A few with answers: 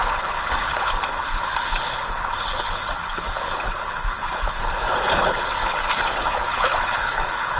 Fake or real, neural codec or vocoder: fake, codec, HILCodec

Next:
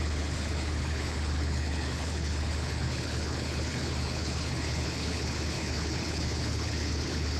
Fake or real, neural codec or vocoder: fake, codec, HILCodec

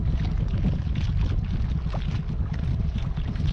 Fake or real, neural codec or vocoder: real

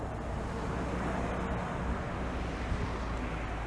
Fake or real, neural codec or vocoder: real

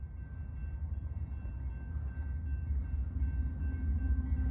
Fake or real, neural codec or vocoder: real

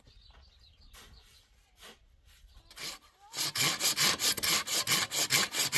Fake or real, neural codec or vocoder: real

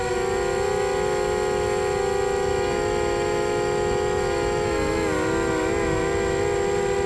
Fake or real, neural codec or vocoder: real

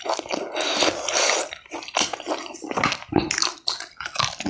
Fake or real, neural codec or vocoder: real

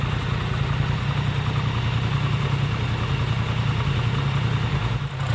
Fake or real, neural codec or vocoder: real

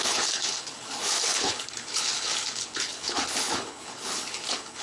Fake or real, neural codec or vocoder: fake, codec, HILCodec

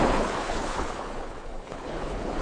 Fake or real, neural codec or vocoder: fake, codec, HILCodec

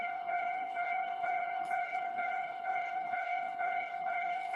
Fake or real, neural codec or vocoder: fake, codec, HILCodec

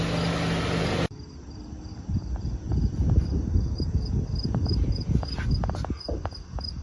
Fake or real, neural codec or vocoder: real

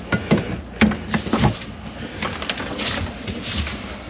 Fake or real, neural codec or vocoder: real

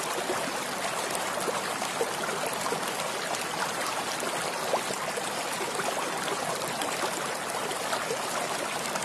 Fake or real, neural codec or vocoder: real